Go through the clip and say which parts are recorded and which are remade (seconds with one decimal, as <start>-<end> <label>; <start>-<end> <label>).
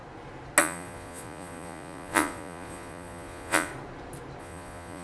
0.0-0.6 recorded; 0.6-3.7 remade; 3.7-4.4 recorded; 4.4-5.0 remade